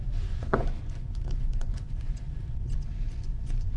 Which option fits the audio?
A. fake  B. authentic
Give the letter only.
A